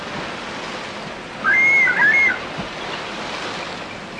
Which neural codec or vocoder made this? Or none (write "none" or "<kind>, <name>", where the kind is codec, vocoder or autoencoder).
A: none